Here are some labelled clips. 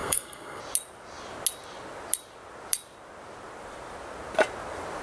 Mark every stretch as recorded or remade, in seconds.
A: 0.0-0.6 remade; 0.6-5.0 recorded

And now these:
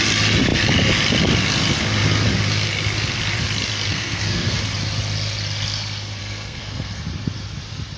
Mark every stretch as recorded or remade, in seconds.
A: 0.0-3.9 recorded; 3.9-4.6 remade; 4.6-6.2 recorded; 6.2-7.0 remade; 7.0-8.0 recorded

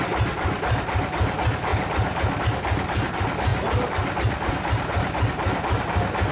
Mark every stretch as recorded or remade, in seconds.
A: 0.0-6.3 recorded

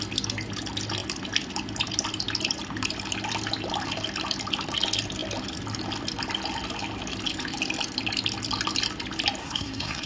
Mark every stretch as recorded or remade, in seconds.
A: 0.0-9.4 recorded; 9.4-10.1 remade

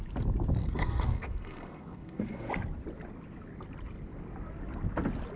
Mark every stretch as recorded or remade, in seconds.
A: 0.0-0.6 recorded; 0.6-2.5 remade; 2.5-5.4 recorded

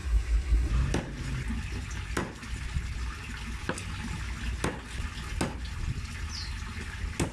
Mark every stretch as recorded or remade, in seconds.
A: 0.0-0.7 remade; 0.7-7.3 recorded

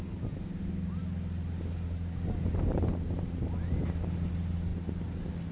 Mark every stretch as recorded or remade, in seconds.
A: 0.0-5.5 recorded